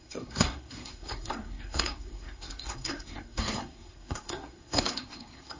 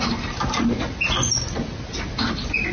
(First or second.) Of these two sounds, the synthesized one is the first